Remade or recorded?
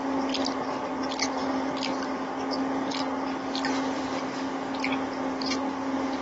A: recorded